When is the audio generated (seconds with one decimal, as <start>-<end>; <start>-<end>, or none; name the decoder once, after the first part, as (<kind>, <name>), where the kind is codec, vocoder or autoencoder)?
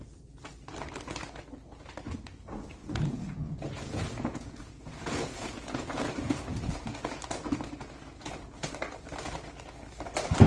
2.8-6.7 (vocoder, Vocos)